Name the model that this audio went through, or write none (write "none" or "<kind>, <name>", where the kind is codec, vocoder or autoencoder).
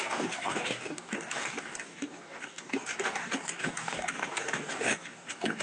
codec, DAC